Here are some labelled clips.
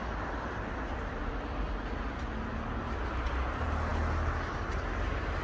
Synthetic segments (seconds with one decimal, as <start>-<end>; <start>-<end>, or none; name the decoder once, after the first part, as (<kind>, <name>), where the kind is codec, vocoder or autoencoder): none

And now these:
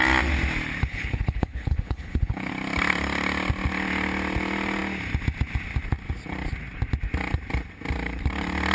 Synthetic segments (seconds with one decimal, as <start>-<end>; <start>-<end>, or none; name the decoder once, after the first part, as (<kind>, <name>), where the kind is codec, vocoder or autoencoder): 0.9-2.5 (codec, HILCodec)

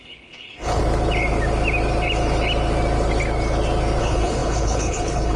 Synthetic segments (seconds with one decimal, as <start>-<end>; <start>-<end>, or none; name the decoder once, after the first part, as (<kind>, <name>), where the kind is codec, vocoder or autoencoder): 0.0-0.8 (codec, HILCodec); 4.0-5.4

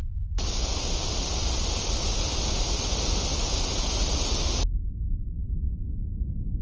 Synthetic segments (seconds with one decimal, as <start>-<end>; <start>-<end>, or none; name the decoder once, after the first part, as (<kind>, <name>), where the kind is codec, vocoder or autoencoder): none

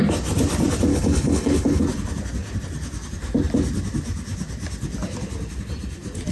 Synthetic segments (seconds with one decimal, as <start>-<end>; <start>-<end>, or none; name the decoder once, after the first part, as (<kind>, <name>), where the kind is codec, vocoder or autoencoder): 0.9-1.8 (codec, HILCodec)

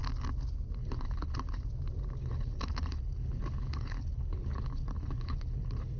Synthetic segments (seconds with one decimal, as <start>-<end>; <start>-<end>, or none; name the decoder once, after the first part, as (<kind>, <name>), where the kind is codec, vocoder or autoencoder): 0.8-1.6 (codec, HILCodec); 2.2-6.0